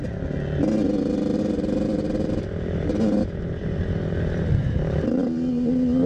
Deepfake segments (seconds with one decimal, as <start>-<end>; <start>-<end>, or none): 1.3-5.0